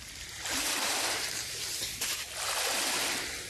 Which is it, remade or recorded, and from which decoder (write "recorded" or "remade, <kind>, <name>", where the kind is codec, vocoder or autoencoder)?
recorded